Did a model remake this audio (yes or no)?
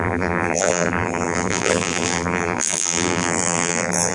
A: yes